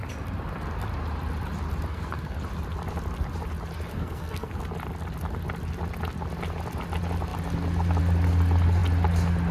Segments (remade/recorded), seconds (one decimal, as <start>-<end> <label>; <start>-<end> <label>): 0.0-1.9 recorded; 1.9-2.4 remade; 2.4-3.9 recorded; 3.9-4.6 remade; 4.6-9.5 recorded

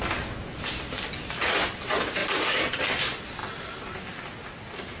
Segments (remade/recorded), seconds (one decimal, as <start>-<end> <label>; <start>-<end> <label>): 0.0-5.0 recorded

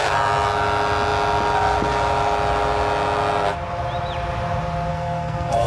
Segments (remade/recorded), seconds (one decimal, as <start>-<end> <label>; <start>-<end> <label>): 0.0-4.9 recorded; 4.9-5.7 remade